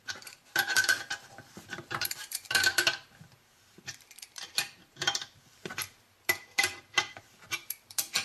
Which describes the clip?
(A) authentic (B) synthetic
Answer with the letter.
B